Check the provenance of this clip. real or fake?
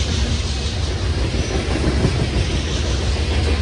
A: real